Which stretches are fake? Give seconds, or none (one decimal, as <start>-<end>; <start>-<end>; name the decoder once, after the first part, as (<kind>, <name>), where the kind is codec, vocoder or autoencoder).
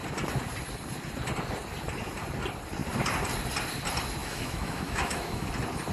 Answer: 4.2-5.5 (autoencoder, DAC-VAE)